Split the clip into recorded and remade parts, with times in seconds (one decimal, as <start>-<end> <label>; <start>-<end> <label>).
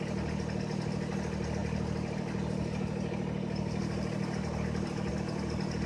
0.0-5.9 recorded